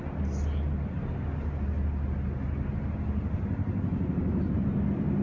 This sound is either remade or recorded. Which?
recorded